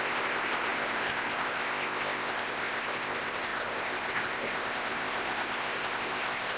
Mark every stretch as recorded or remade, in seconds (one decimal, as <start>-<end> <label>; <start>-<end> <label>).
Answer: 0.0-6.6 remade